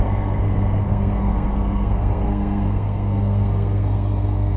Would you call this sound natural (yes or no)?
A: no